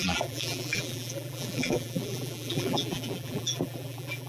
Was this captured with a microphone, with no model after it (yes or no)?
no